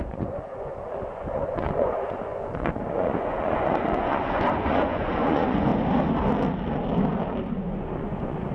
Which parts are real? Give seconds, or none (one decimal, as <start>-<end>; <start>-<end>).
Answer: 5.7-7.4